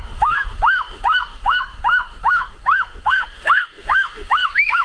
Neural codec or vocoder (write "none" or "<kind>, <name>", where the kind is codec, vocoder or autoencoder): autoencoder, DAC-VAE